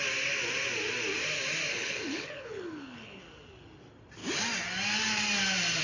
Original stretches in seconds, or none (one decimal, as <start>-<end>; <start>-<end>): 0.0-1.7; 3.2-5.8